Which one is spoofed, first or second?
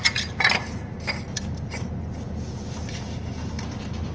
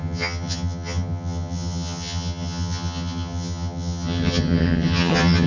second